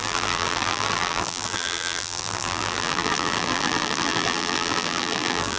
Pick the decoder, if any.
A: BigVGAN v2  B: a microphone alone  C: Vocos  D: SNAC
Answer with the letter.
A